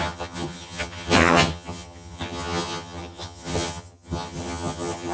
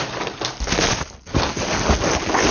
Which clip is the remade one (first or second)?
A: first